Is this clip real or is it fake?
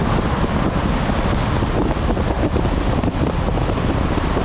real